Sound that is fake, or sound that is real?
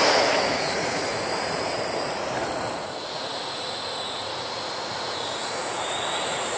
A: fake